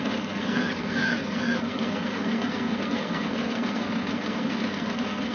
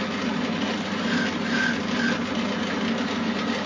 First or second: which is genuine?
second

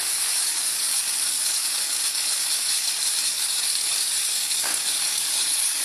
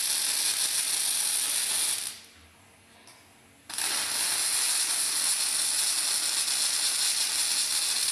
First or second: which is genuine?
second